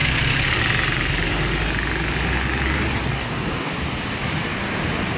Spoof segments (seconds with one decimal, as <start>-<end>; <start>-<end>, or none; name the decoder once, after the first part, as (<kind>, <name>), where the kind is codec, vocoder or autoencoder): 3.1-3.7 (codec, DAC)